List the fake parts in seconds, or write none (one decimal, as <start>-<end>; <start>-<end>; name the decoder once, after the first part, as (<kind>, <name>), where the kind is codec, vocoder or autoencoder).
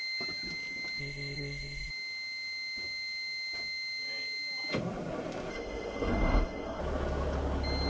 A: 1.0-1.9 (codec, SNAC); 5.5-6.8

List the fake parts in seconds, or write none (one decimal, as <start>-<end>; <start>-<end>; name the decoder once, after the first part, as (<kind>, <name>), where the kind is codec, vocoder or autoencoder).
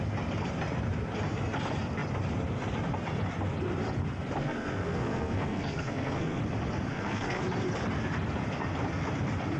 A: 4.4-6.4 (codec, SNAC); 6.9-7.4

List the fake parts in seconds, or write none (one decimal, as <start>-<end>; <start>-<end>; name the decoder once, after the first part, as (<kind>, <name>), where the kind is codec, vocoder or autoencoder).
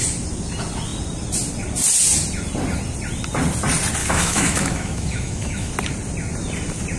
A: 4.0-5.7 (autoencoder, DAC-VAE)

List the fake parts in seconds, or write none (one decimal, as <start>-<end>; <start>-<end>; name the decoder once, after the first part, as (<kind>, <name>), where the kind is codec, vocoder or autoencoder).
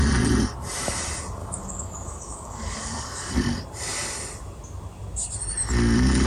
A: 1.4-3.3 (codec, DAC)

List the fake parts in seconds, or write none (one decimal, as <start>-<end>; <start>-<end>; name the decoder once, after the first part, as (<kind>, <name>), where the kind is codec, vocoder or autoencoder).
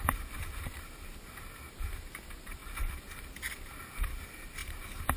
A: none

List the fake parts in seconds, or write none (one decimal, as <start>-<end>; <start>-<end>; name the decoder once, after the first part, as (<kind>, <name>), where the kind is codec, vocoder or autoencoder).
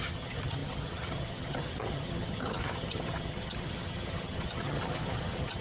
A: 0.0-5.6 (vocoder, HiFi-GAN)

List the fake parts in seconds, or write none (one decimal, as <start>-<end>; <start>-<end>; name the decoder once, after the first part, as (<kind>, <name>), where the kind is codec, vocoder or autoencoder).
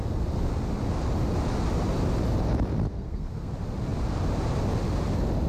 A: 2.9-3.5 (codec, SNAC)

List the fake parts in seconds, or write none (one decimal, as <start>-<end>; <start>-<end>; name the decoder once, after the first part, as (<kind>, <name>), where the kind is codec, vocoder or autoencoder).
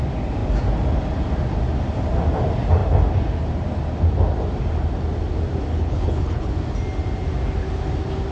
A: 5.7-6.5 (codec, HILCodec)